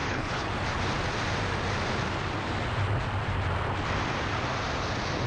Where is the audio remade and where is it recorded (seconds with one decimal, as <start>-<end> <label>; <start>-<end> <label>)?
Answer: 0.0-0.5 remade; 0.5-5.3 recorded